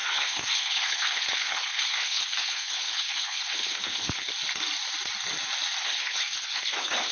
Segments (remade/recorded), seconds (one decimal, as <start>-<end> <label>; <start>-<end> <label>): 0.0-4.3 remade; 4.3-5.8 recorded; 5.8-7.1 remade